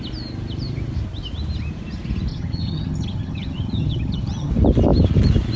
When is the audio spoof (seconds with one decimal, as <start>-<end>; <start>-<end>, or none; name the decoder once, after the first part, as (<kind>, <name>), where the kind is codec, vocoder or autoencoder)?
2.3-4.5 (vocoder, HiFi-GAN)